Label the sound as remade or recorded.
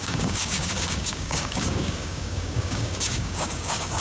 remade